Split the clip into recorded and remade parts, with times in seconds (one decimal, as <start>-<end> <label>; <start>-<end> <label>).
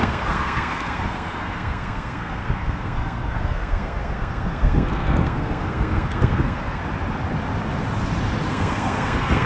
0.0-6.8 remade; 6.8-8.5 recorded; 8.5-9.5 remade